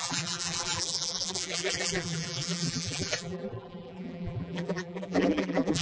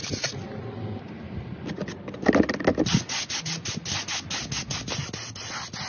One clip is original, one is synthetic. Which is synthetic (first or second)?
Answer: first